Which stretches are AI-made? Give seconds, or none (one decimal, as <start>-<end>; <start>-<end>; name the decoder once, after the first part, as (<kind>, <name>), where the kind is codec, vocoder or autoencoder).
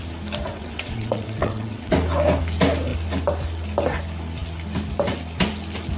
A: 0.5-1.9 (vocoder, WaveNeXt)